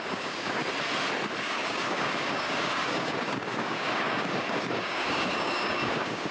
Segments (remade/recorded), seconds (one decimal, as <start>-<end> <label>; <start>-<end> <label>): 0.0-0.6 remade; 0.6-1.4 recorded; 1.4-6.3 remade